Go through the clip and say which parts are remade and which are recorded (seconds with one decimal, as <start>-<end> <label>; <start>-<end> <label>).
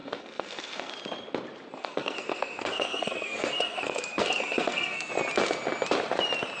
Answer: 0.0-0.9 remade; 0.9-1.8 recorded; 1.8-5.1 remade; 5.1-6.6 recorded